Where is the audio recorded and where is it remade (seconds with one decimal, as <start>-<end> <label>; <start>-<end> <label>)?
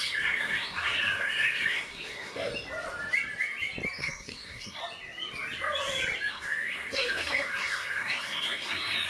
0.0-2.5 remade; 2.5-4.0 recorded; 4.0-4.8 remade; 4.8-6.3 recorded; 6.3-9.1 remade